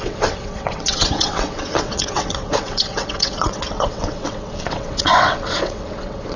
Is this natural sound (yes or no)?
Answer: no